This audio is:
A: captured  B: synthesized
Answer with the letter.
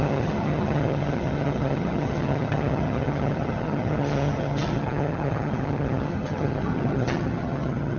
B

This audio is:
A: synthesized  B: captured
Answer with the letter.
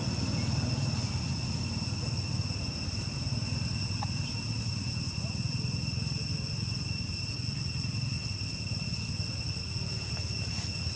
B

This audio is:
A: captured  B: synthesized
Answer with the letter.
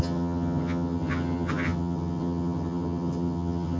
B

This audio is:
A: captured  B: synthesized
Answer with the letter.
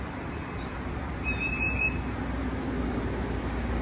A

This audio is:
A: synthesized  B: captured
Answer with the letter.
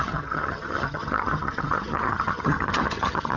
A